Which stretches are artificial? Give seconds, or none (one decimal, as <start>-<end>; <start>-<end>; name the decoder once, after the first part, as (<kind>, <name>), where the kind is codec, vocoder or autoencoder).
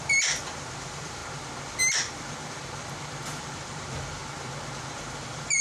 0.0-1.2 (vocoder, BigVGAN v2); 3.4-4.2; 4.9-5.6